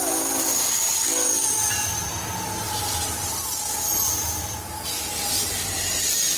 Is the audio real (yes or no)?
yes